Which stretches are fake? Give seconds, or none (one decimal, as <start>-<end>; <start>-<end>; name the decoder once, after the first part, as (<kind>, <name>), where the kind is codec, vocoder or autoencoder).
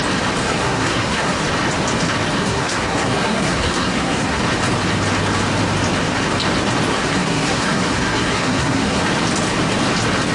0.4-1.4 (codec, SNAC); 2.4-4.4; 6.9-9.0